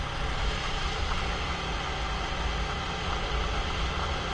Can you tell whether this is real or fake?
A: real